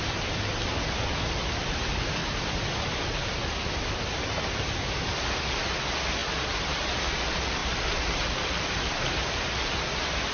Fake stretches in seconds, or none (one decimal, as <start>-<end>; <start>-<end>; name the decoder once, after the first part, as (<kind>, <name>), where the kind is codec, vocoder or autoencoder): 2.2-2.7 (vocoder, BigVGAN v2); 7.6-9.4